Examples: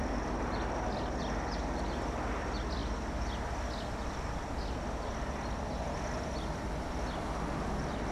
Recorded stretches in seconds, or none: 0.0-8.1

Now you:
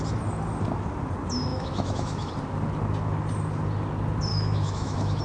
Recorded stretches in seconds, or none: 0.0-1.5; 2.3-4.3

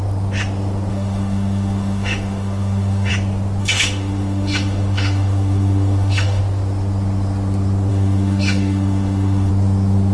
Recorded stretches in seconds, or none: 0.0-0.9; 3.1-3.6; 6.4-7.9; 9.5-10.1

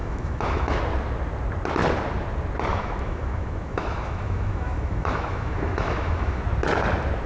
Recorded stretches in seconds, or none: 0.8-2.7; 6.4-7.3